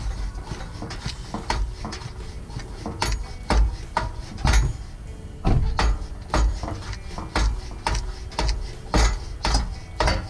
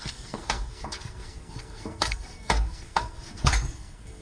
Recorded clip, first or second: first